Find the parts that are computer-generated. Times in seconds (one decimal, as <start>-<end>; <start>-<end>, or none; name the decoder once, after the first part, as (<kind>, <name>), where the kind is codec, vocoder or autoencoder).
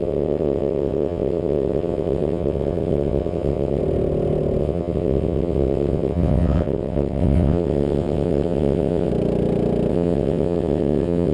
0.0-3.8 (vocoder, WaveNeXt); 4.6-9.1; 9.9-11.3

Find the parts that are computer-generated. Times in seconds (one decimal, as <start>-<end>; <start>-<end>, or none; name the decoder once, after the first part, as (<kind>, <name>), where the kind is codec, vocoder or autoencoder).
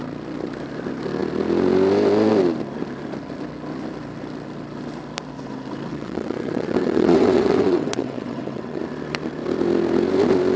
5.9-8.8 (vocoder, WaveNeXt)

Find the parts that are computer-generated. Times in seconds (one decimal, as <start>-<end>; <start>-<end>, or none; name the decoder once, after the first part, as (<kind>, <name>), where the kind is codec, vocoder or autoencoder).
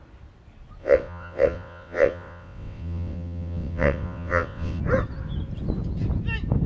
0.8-4.8 (vocoder, WaveNeXt)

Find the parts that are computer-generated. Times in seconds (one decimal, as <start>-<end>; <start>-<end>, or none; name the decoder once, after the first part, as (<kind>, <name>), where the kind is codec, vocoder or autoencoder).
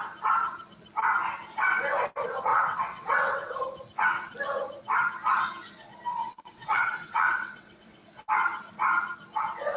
2.5-3.6 (vocoder, WaveNeXt); 6.1-8.0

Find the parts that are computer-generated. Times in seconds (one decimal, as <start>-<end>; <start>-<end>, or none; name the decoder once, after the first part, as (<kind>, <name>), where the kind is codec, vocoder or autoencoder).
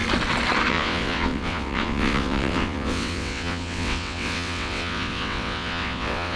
0.7-6.4 (vocoder, WaveNeXt)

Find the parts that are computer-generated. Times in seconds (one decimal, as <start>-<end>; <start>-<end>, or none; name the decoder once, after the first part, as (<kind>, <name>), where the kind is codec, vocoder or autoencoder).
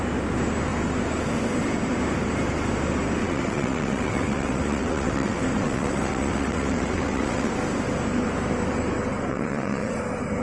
3.2-7.5 (vocoder, WaveNeXt); 9.3-9.9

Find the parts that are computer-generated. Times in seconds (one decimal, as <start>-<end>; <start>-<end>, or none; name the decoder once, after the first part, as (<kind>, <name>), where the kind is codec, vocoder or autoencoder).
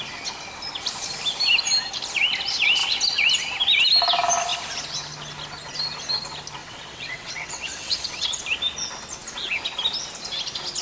6.6-8.4 (vocoder, WaveNeXt)